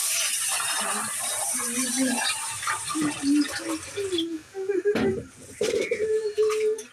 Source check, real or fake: fake